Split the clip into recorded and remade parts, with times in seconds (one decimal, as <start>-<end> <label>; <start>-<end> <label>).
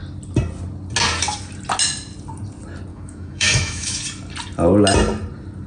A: 0.0-2.9 recorded; 2.9-4.0 remade; 4.0-5.7 recorded